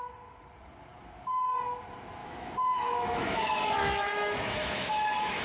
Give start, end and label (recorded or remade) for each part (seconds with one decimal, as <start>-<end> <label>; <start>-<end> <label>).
0.0-2.2 recorded; 2.2-5.4 remade